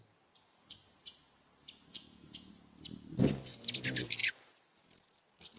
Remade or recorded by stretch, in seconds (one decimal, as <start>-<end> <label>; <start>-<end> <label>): 0.0-1.9 recorded; 1.9-2.5 remade; 2.5-5.6 recorded